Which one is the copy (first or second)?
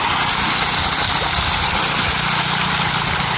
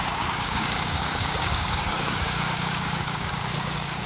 second